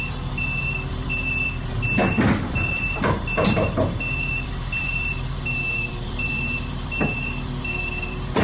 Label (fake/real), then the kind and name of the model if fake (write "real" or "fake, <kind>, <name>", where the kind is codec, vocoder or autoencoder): fake, vocoder, BigVGAN v2